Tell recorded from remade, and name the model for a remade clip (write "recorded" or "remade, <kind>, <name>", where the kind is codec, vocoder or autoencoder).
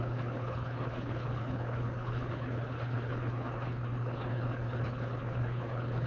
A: remade, codec, HILCodec